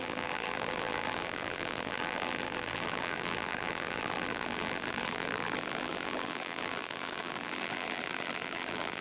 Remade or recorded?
remade